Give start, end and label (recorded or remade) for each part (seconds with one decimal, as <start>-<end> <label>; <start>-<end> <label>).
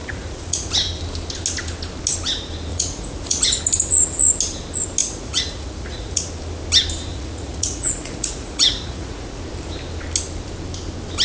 0.0-0.7 remade; 0.7-2.7 recorded; 2.7-3.6 remade; 3.6-5.0 recorded; 5.0-6.3 remade; 6.3-7.1 recorded; 7.1-9.4 remade; 9.4-11.2 recorded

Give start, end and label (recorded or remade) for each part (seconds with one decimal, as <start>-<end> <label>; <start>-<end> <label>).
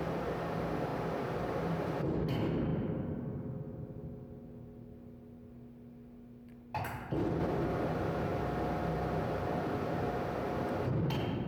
0.0-11.5 recorded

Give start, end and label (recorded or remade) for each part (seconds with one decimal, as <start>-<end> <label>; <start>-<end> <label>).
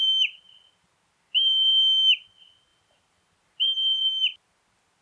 0.0-5.0 recorded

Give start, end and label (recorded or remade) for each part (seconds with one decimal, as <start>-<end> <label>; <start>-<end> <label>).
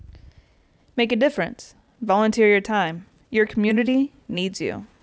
0.0-3.7 recorded; 3.7-4.5 remade; 4.5-5.0 recorded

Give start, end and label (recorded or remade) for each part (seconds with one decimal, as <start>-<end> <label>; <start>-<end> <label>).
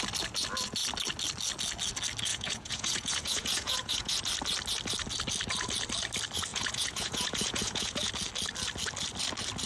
0.0-2.3 recorded; 2.3-4.2 remade; 4.2-6.5 recorded; 6.5-8.1 remade; 8.1-9.7 recorded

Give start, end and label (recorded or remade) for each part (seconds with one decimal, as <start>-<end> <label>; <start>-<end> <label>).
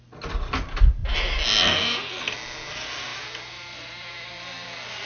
0.0-5.1 recorded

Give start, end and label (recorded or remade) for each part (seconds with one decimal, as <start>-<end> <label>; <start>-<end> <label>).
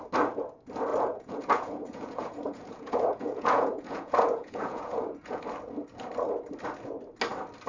0.0-0.9 recorded; 0.9-5.4 remade; 5.4-7.7 recorded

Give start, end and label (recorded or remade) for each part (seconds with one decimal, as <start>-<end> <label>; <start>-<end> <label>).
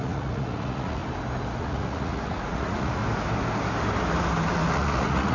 0.0-1.0 remade; 1.0-1.6 recorded; 1.6-3.0 remade; 3.0-4.7 recorded; 4.7-5.3 remade